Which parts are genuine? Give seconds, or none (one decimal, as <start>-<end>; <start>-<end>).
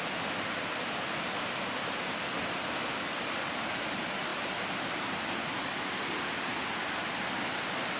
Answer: 0.0-8.0